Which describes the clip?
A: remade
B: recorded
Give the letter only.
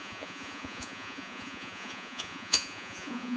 A